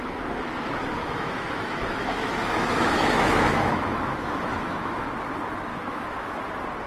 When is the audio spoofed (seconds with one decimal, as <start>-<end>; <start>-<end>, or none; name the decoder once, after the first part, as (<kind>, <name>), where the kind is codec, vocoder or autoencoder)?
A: 1.0-5.1 (autoencoder, DAC-VAE); 5.7-6.4